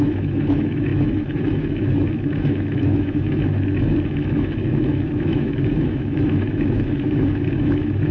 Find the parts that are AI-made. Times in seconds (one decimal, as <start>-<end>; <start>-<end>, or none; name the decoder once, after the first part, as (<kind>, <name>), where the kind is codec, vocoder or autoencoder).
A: 0.0-8.1 (autoencoder, DAC-VAE)